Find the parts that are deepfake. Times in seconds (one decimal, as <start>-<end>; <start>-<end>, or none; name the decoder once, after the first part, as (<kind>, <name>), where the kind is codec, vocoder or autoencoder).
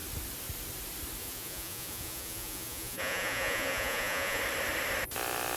1.2-4.4 (vocoder, Vocos)